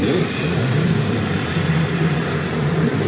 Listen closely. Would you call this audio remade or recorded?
remade